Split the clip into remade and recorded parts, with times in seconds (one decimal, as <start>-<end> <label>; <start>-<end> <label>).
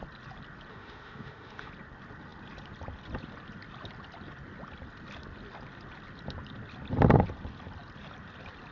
0.0-0.7 recorded; 0.7-1.7 remade; 1.7-8.7 recorded